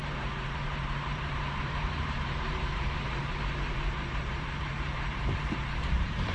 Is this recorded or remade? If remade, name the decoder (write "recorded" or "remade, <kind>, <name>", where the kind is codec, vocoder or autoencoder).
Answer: remade, vocoder, BigVGAN v2